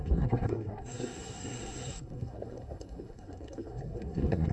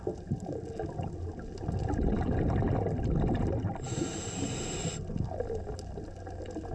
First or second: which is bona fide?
second